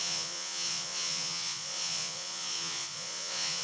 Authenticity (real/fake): fake